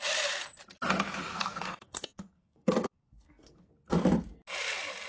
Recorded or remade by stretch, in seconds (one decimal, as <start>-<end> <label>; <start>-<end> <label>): 0.0-1.3 recorded; 1.3-3.7 remade; 3.7-5.1 recorded